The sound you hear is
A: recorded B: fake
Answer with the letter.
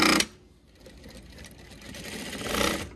A